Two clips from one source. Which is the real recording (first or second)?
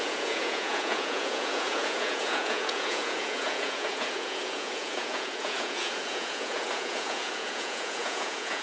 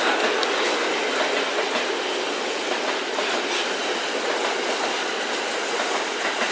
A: second